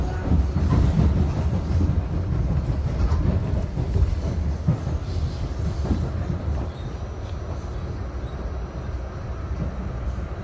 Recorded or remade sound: recorded